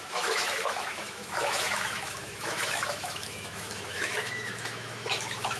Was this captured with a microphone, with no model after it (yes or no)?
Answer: no